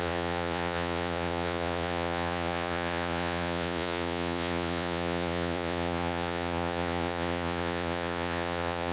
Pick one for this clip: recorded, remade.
remade